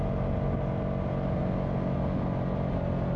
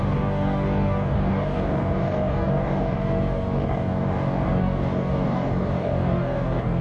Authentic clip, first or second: first